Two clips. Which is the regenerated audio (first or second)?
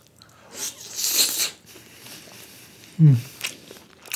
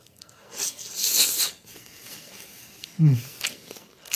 second